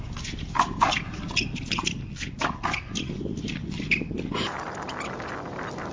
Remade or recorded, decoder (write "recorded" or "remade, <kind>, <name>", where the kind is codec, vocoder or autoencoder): recorded